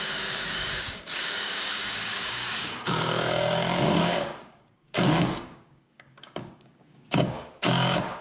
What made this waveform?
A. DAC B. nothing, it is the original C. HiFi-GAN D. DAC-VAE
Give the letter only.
A